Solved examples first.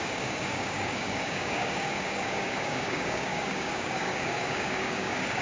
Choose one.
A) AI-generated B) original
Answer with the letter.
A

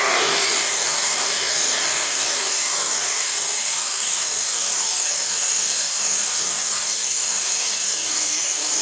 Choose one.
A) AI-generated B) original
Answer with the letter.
A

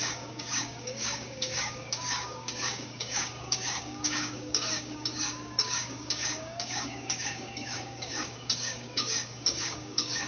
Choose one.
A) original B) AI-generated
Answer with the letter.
B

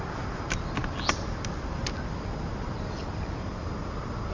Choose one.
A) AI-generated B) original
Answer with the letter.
B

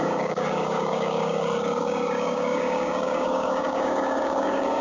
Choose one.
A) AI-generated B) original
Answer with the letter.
A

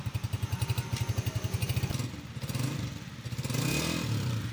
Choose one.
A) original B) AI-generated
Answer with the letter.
A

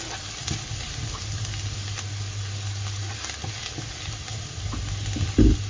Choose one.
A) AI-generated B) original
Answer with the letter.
B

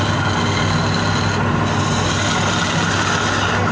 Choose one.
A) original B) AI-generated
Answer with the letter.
A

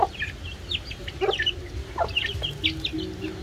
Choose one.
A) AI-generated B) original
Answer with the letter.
B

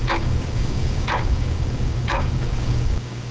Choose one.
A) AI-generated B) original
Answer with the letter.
A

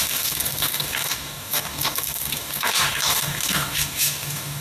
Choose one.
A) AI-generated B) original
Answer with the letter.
A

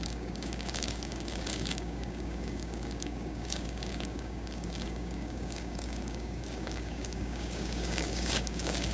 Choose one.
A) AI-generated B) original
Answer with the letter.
A